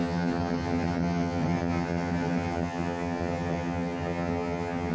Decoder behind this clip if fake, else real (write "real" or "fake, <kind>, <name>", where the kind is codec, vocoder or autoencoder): fake, vocoder, HiFi-GAN